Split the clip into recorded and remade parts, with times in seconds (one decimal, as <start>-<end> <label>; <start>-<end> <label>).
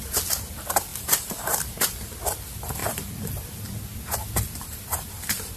0.0-5.6 remade